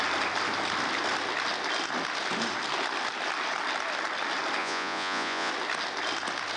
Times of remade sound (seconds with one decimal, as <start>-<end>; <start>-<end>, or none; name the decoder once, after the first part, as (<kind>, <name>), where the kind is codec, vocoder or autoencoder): 4.6-5.5 (vocoder, Vocos)